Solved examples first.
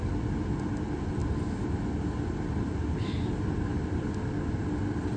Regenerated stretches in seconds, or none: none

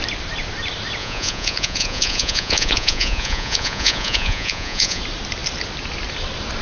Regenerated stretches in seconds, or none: 1.0-5.0

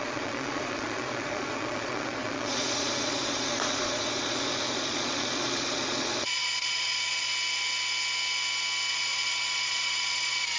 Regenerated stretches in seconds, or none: 0.0-7.3; 8.9-10.6

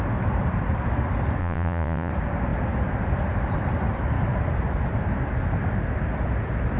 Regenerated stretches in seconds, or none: 1.4-2.1